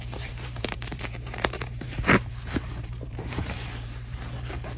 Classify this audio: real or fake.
fake